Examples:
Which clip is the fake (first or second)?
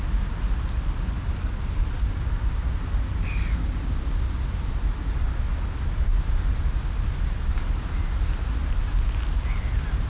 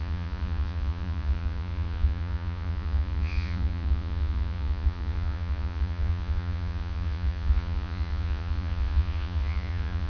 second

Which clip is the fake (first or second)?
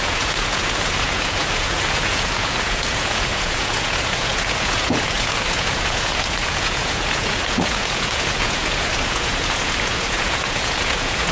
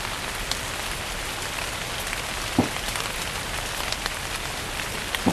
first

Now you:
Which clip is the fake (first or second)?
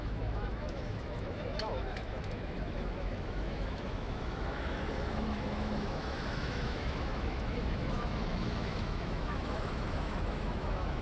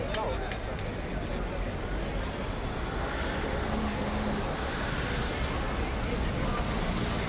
first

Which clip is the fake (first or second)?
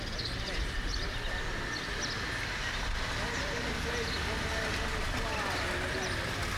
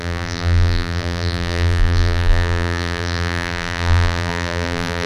second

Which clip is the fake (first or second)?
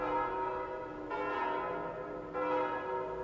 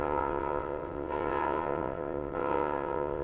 second